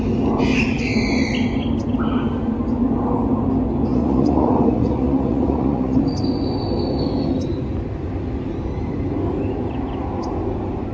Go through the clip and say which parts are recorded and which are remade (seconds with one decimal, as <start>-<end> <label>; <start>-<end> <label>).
0.0-3.9 recorded; 3.9-6.0 remade; 6.0-10.9 recorded